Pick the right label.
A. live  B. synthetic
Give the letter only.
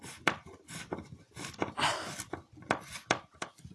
A